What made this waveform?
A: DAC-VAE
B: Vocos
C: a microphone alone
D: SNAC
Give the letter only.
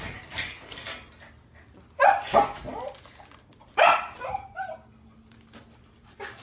C